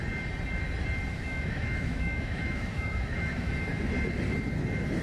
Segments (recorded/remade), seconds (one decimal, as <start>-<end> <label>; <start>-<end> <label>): 0.0-1.1 recorded; 1.1-3.5 remade; 3.5-5.0 recorded